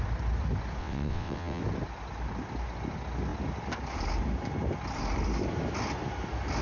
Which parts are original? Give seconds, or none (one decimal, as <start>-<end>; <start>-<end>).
0.0-0.8; 1.6-6.6